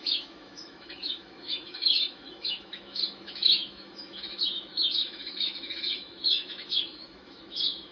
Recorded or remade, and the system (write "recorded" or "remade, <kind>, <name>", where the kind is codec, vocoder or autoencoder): remade, autoencoder, DAC-VAE